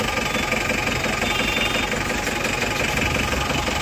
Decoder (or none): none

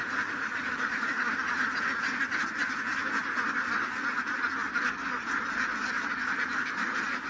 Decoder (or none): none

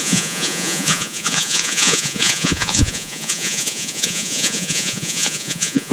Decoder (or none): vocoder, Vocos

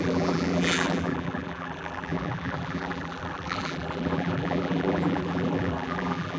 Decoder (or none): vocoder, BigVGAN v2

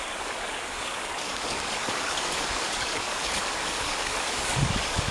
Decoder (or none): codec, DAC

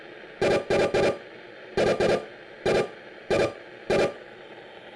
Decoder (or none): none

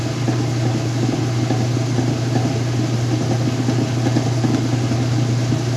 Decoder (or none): none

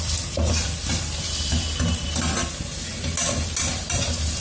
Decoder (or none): none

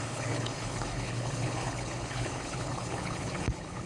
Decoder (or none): codec, HILCodec